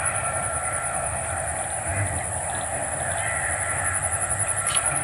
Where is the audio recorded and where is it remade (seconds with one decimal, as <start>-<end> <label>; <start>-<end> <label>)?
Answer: 0.0-1.9 remade; 1.9-4.6 recorded; 4.6-5.0 remade